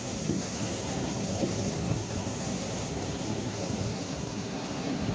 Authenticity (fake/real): fake